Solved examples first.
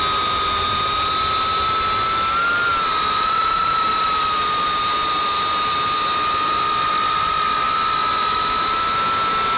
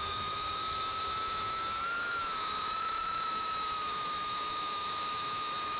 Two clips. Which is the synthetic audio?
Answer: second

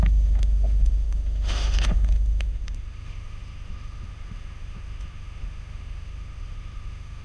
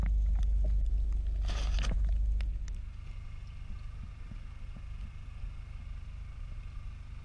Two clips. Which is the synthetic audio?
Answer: first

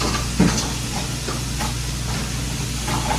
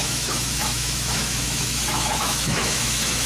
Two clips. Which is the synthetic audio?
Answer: second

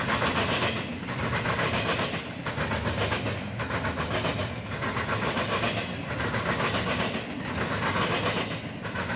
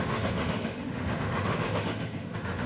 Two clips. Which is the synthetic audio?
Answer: second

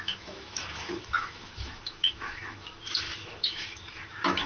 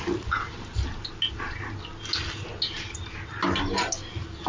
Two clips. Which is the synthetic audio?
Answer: first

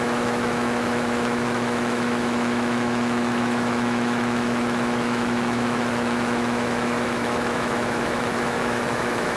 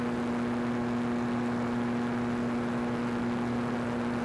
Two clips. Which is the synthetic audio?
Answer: first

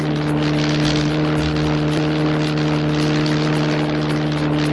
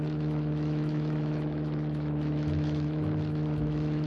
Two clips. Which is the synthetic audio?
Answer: second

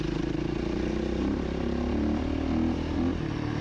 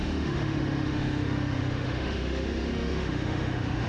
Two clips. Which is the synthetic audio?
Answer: second